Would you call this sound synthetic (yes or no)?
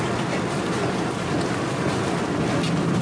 no